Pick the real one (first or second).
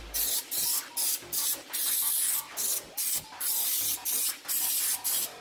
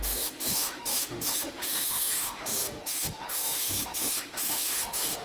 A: first